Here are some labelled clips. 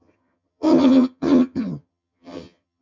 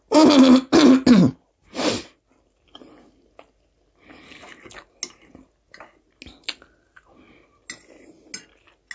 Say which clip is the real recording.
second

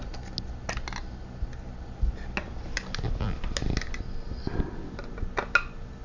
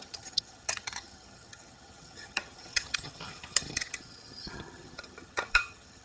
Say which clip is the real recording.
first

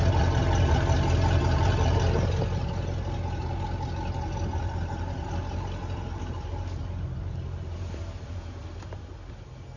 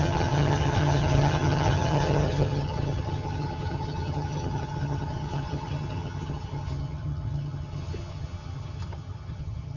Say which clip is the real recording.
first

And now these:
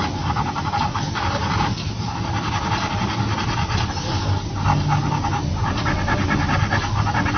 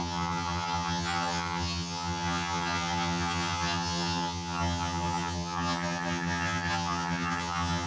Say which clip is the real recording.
first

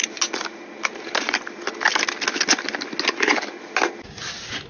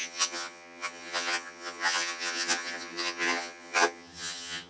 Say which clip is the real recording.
first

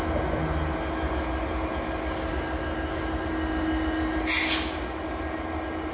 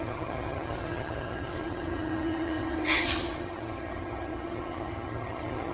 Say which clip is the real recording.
first